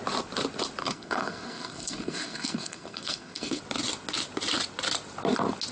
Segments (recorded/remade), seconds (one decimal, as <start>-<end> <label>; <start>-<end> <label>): 0.0-0.8 recorded; 0.8-3.6 remade; 3.6-5.7 recorded